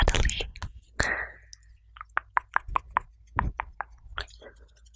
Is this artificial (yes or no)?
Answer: no